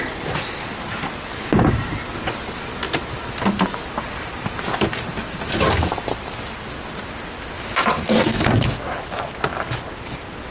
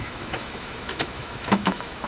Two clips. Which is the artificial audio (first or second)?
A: second